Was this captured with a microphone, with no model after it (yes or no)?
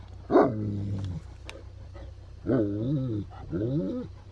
yes